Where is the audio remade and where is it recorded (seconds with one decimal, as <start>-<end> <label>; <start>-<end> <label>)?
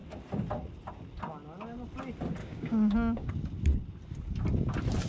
0.0-2.4 recorded; 2.4-3.3 remade; 3.3-5.1 recorded